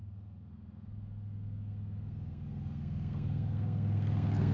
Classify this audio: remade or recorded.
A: remade